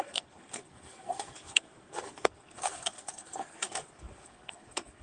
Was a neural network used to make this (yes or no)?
yes